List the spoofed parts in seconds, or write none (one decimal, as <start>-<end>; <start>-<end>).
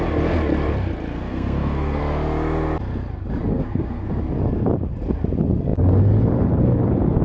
1.1-2.0; 3.5-4.1